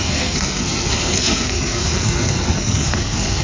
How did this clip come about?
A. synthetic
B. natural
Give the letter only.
A